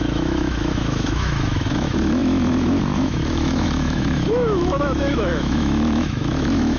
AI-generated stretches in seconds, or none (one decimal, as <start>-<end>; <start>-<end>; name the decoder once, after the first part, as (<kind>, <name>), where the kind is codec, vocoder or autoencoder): 0.0-6.8 (autoencoder, DAC-VAE)